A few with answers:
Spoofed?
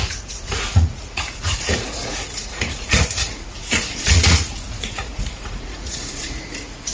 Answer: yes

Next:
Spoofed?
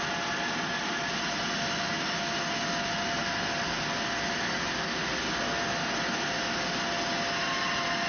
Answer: no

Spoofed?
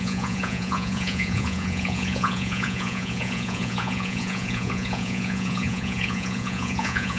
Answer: yes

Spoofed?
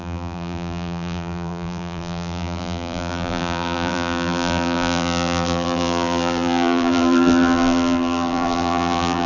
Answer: yes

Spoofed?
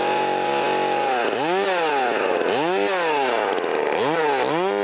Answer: no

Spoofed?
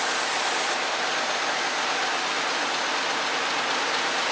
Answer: no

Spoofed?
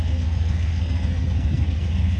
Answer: yes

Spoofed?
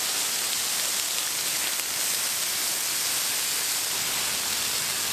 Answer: no